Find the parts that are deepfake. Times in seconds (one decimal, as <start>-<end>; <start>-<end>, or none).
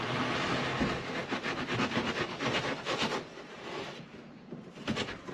3.3-4.7